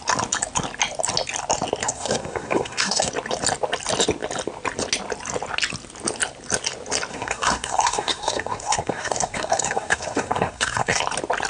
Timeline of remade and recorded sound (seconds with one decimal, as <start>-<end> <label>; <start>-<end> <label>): 0.0-1.8 recorded; 1.8-3.1 remade; 3.1-7.1 recorded; 7.1-11.0 remade; 11.0-11.5 recorded